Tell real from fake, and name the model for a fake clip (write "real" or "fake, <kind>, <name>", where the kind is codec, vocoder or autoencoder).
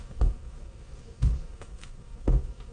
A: fake, codec, SNAC